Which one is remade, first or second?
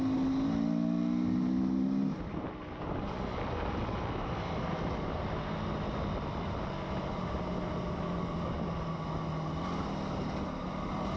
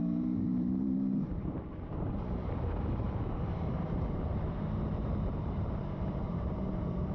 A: second